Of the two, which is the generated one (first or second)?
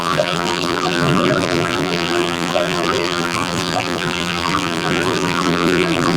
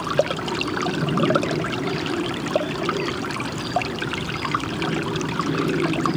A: first